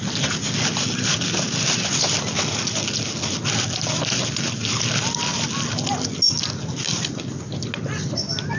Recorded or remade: recorded